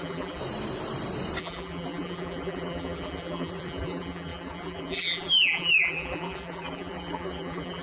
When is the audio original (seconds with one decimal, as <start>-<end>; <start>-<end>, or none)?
0.4-1.4